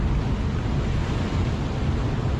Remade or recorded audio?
recorded